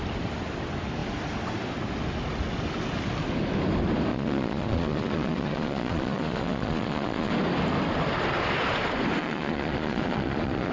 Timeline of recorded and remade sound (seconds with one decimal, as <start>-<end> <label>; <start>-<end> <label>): 0.0-4.1 recorded; 4.1-7.3 remade; 7.3-9.2 recorded; 9.2-10.7 remade